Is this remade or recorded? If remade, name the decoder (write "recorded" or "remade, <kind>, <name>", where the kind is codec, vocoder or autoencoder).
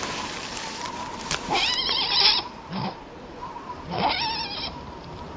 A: remade, vocoder, BigVGAN v2